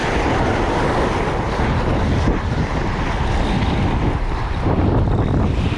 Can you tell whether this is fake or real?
real